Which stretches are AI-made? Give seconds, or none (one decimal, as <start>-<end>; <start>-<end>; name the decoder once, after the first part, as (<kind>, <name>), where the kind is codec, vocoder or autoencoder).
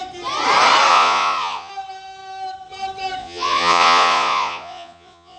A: 0.9-1.7 (vocoder, Vocos); 3.2-5.4